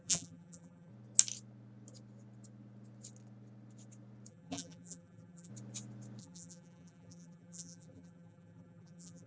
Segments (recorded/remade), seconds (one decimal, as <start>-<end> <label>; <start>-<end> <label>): 0.0-0.9 remade; 0.9-4.3 recorded; 4.3-5.5 remade; 5.5-6.2 recorded; 6.2-9.3 remade